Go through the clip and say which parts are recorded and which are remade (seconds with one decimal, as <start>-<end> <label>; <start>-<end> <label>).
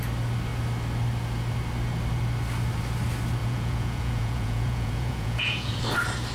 0.0-3.4 recorded; 3.4-5.8 remade; 5.8-6.3 recorded